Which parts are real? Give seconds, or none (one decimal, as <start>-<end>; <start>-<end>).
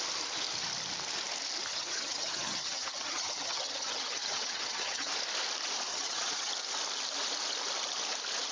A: 0.0-1.7; 5.1-5.9; 6.5-8.5